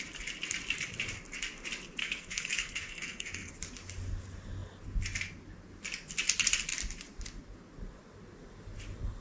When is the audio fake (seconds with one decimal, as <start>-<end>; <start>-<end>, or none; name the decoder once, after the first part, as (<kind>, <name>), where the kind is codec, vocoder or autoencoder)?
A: 2.0-3.5 (codec, SNAC)